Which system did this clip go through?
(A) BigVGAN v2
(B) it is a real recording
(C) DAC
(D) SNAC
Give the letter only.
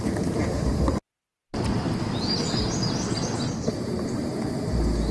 B